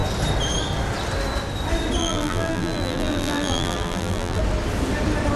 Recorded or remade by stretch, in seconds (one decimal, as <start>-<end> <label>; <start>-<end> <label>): 0.0-2.0 recorded; 2.0-4.4 remade; 4.4-5.4 recorded